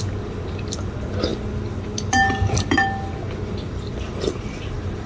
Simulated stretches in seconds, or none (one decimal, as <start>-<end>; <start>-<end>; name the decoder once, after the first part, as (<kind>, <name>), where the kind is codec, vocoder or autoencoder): none